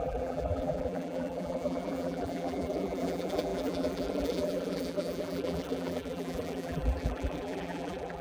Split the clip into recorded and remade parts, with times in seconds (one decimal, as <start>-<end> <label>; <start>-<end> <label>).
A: 0.0-8.2 remade

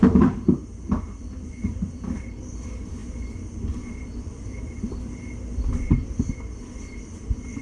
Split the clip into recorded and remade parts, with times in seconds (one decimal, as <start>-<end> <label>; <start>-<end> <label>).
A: 0.0-0.6 remade; 0.6-1.2 recorded; 1.2-7.6 remade

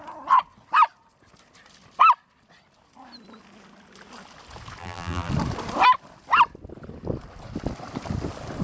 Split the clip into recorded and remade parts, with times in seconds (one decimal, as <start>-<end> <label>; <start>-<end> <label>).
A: 0.0-4.8 recorded; 4.8-5.3 remade; 5.3-8.6 recorded

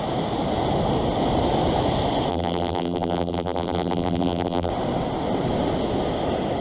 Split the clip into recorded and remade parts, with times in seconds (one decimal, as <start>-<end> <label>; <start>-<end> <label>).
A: 0.0-2.3 recorded; 2.3-4.7 remade; 4.7-6.6 recorded

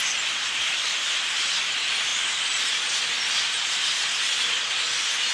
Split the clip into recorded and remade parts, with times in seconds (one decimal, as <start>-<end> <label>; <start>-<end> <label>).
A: 0.0-2.1 remade; 2.1-3.3 recorded; 3.3-5.3 remade

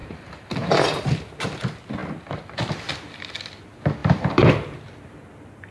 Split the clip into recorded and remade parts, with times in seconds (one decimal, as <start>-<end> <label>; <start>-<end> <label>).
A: 0.0-1.1 remade; 1.1-4.0 recorded; 4.0-4.5 remade; 4.5-5.7 recorded

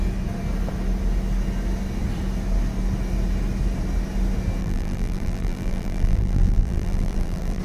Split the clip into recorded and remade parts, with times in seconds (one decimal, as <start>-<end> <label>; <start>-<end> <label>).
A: 0.0-4.6 recorded; 4.6-7.6 remade

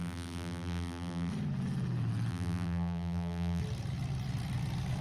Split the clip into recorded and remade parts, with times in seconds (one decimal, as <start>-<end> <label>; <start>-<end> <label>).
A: 0.0-1.3 remade; 1.3-2.3 recorded; 2.3-3.6 remade; 3.6-5.0 recorded